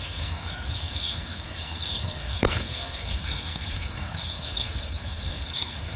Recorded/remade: remade